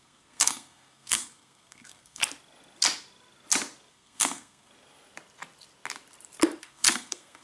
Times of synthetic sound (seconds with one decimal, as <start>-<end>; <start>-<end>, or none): 0.0-2.2; 3.9-4.7; 6.6-7.4